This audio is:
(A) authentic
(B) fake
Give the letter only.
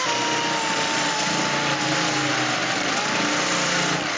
A